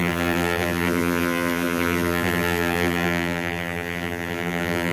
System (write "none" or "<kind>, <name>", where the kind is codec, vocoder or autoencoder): vocoder, BigVGAN v2